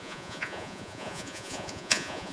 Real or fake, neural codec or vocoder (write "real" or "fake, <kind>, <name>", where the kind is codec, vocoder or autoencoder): fake, vocoder, Vocos